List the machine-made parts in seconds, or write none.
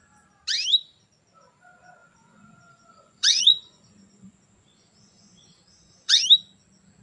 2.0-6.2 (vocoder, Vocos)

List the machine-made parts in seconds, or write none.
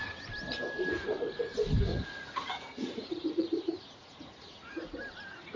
1.9-4.9 (vocoder, Vocos)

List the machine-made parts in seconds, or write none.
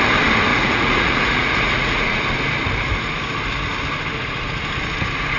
0.5-2.2 (vocoder, Vocos)